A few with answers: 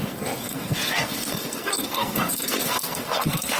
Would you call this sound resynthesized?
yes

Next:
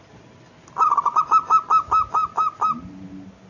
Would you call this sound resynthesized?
no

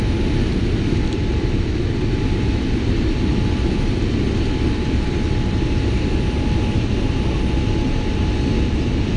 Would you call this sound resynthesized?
no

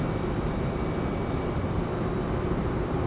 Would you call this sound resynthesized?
no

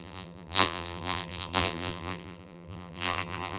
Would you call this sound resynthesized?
yes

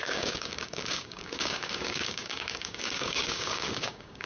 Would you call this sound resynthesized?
yes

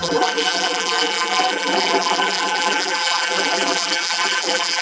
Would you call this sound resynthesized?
yes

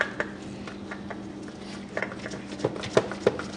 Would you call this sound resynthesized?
no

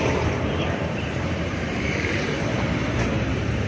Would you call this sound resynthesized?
yes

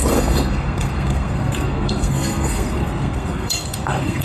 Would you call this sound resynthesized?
yes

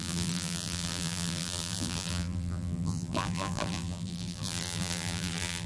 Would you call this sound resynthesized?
yes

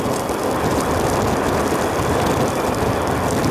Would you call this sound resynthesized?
no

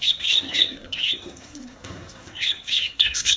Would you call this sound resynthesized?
yes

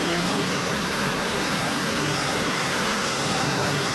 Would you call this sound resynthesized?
yes